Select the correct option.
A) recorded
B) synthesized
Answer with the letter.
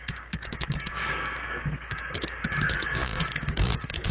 B